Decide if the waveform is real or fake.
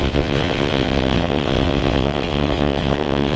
fake